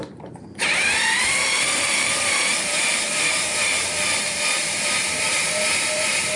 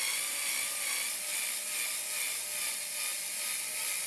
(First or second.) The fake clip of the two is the first